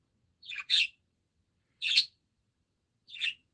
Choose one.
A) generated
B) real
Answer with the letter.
A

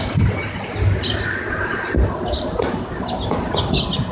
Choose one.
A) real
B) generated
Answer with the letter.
A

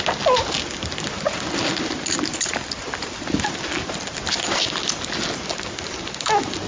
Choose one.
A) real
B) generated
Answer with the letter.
A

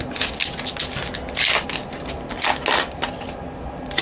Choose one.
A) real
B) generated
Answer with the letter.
A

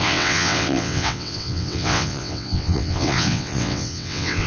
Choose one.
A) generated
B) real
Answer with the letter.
A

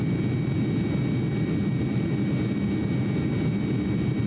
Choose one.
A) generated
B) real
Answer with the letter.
B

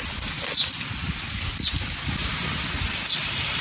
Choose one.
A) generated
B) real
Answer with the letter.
B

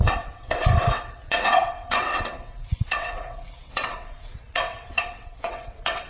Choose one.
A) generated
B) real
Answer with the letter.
A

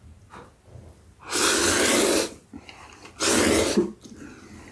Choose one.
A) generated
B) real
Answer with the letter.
B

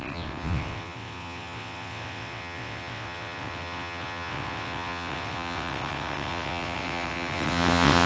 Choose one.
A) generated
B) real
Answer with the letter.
A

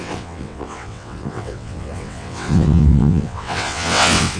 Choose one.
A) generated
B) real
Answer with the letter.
A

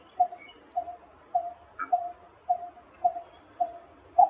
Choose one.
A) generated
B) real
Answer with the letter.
B